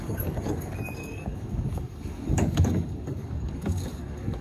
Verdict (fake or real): fake